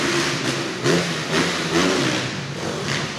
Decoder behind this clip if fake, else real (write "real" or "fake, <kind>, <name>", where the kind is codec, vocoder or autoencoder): real